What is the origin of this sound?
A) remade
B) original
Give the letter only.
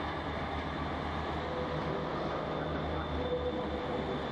B